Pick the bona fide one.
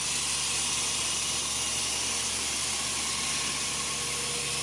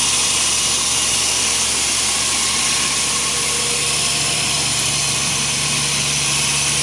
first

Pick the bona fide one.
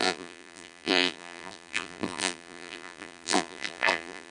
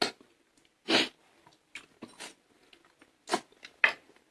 second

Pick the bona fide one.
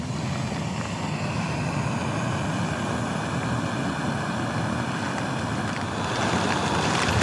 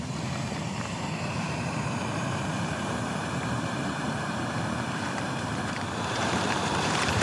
first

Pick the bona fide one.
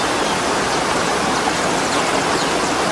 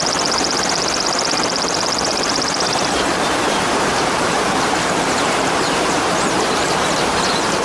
first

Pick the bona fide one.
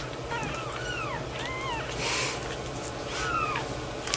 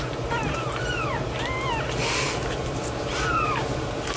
first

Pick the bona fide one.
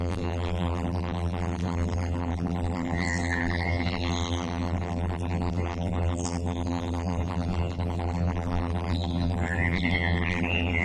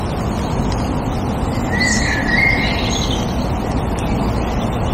second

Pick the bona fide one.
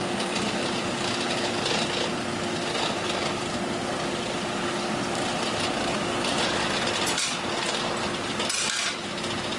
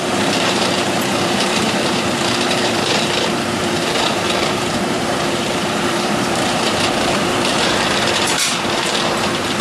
first